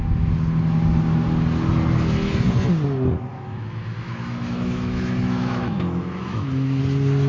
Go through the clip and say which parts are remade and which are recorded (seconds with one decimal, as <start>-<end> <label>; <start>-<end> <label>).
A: 0.0-3.3 recorded; 3.3-6.8 remade; 6.8-7.3 recorded